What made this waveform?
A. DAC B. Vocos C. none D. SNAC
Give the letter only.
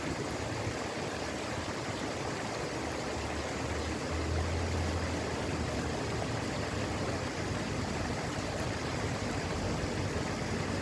C